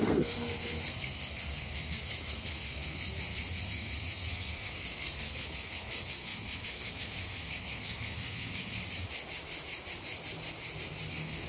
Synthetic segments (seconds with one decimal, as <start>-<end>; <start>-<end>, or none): 0.0-8.8; 11.1-11.5